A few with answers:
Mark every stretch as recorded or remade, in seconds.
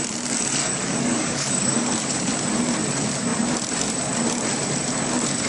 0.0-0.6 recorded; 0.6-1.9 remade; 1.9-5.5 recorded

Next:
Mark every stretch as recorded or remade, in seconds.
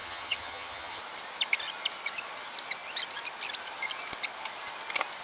0.0-1.0 remade; 1.0-5.2 recorded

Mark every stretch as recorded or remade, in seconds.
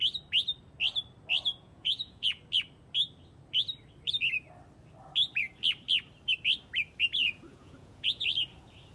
0.0-1.5 recorded; 1.5-2.4 remade; 2.4-7.2 recorded; 7.2-8.2 remade; 8.2-8.9 recorded